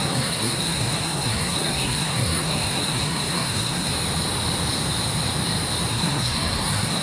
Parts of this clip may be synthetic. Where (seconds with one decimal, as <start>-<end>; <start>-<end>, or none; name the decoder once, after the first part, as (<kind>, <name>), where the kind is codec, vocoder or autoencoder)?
0.0-3.9 (codec, SNAC); 5.9-7.0